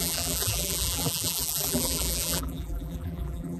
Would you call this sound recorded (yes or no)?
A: no